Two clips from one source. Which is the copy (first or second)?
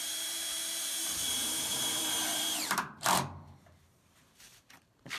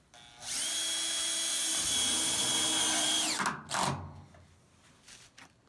first